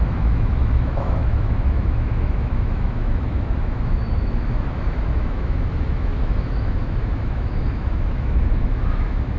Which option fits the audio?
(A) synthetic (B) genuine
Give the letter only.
A